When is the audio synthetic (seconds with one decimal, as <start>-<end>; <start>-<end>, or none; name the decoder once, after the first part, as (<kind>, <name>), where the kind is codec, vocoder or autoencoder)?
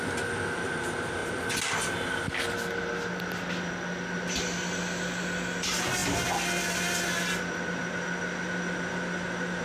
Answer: none